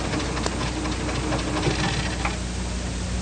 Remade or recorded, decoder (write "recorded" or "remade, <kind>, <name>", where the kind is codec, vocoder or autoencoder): recorded